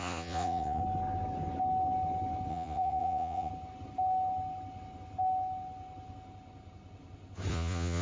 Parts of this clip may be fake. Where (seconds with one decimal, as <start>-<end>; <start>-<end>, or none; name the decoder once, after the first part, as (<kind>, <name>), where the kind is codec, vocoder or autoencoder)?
0.0-0.8 (vocoder, Vocos); 2.5-3.5; 7.5-8.0